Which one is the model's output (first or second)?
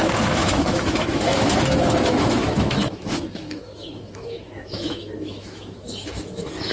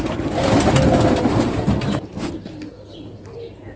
first